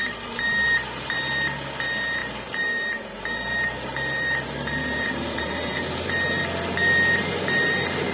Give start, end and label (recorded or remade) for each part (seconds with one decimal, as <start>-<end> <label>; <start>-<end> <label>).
0.0-1.2 remade; 1.2-2.2 recorded; 2.2-6.4 remade; 6.4-8.1 recorded